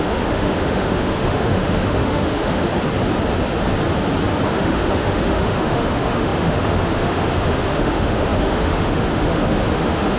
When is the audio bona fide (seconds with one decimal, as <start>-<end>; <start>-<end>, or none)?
2.7-4.5